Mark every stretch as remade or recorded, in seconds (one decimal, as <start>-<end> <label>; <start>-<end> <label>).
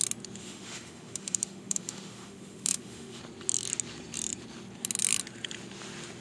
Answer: 0.0-0.4 recorded; 0.4-3.2 remade; 3.2-6.2 recorded